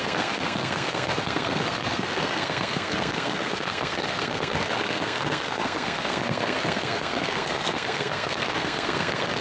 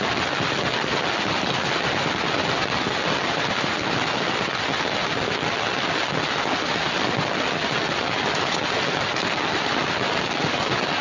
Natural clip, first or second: second